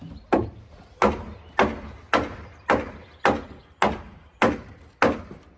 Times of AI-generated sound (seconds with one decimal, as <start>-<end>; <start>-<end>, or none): none